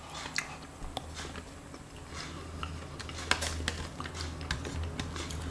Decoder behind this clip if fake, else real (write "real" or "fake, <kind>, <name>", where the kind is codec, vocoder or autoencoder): real